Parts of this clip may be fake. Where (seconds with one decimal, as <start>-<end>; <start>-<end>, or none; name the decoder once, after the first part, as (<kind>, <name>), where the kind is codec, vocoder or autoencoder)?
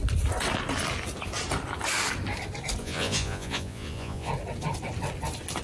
2.8-4.3 (vocoder, Vocos)